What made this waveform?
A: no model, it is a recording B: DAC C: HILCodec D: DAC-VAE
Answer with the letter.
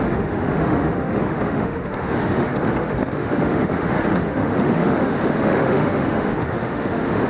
D